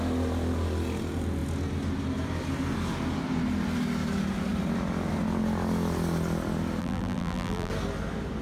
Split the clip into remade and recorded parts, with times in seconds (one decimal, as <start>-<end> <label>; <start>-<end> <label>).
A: 0.0-6.8 recorded; 6.8-7.7 remade; 7.7-8.4 recorded

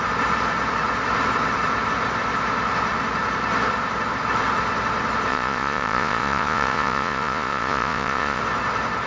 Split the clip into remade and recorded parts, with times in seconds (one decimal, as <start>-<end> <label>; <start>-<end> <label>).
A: 0.0-5.3 recorded; 5.3-8.4 remade; 8.4-9.1 recorded